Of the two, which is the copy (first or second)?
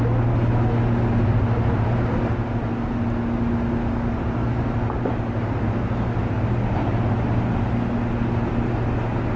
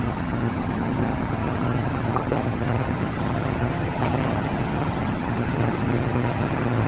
second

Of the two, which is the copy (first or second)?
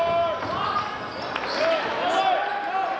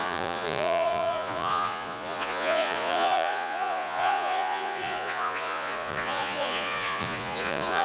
second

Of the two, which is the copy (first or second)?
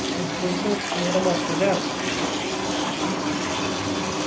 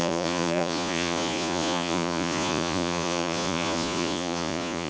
second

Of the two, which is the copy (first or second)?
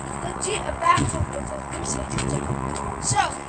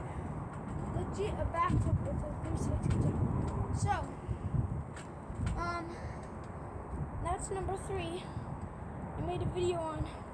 first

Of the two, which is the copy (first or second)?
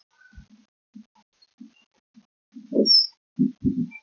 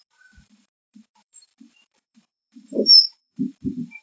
second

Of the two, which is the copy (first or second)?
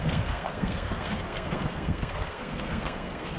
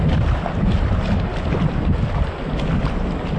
first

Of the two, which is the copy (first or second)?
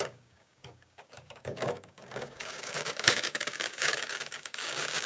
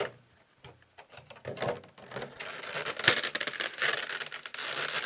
first